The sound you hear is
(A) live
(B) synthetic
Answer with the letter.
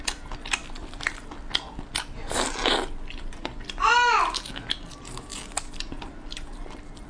A